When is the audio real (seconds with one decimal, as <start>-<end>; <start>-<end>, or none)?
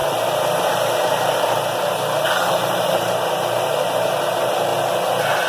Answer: 4.7-5.5